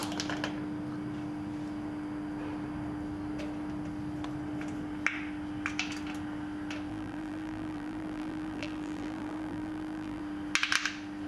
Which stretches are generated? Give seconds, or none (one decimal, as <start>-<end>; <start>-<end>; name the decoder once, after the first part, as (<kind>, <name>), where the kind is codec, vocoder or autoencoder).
6.9-10.2 (vocoder, BigVGAN v2)